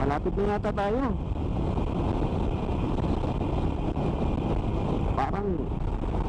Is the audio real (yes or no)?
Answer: yes